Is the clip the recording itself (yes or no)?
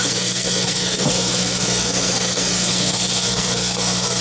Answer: no